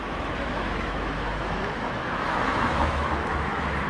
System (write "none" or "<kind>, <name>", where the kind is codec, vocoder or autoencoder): autoencoder, DAC-VAE